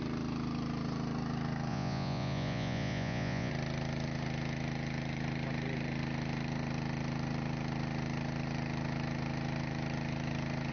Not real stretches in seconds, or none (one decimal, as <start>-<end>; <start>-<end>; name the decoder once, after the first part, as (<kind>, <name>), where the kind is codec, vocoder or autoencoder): 1.7-3.5 (vocoder, Vocos)